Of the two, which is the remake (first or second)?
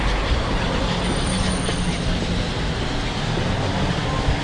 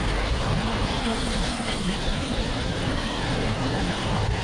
second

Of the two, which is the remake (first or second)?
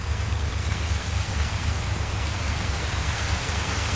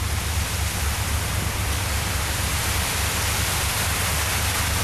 first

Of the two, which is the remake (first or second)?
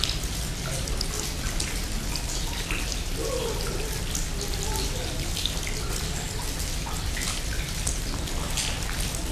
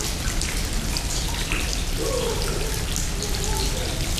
second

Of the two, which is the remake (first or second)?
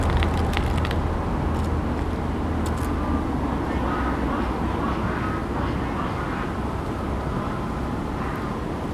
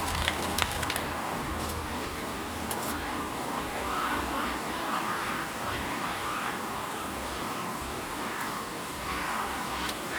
second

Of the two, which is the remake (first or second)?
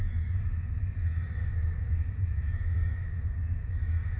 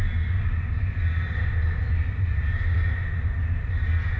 first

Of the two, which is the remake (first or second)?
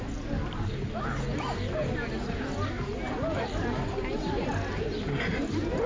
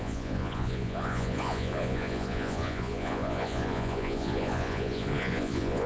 second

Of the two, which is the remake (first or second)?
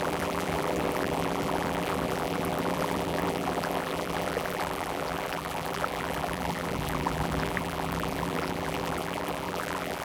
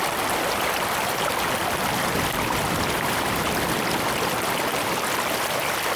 first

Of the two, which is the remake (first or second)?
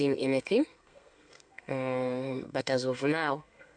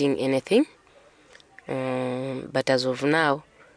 first